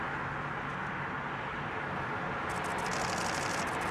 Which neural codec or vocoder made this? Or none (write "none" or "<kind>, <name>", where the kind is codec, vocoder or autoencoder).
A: none